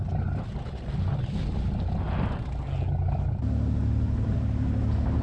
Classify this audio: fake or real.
real